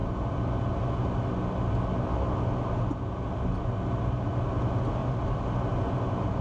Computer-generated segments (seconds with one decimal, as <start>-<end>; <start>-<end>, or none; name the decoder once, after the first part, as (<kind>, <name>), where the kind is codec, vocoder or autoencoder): 0.0-0.9 (vocoder, BigVGAN v2); 5.0-5.7